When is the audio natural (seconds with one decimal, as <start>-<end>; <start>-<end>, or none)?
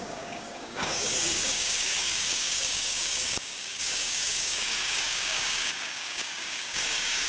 none